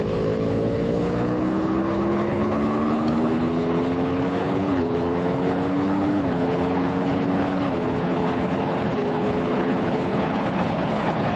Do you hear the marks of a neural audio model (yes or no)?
yes